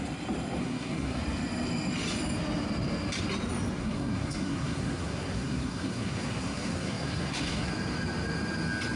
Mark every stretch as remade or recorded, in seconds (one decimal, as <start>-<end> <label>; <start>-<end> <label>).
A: 0.0-0.6 recorded; 0.6-1.2 remade; 1.2-3.8 recorded; 3.8-7.7 remade; 7.7-9.0 recorded